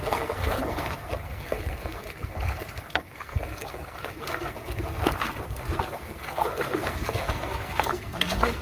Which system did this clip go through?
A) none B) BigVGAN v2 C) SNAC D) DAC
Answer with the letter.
C